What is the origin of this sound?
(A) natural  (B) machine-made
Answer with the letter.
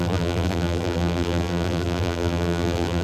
B